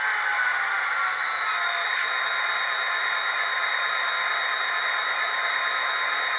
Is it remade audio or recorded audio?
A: recorded